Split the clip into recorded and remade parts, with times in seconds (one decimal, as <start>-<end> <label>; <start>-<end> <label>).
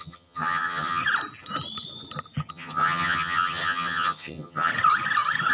0.0-1.0 remade; 1.0-2.5 recorded; 2.5-4.7 remade; 4.7-5.5 recorded